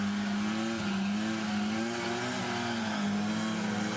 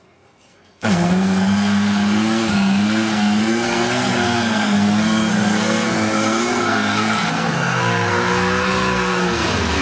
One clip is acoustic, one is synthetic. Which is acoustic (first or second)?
first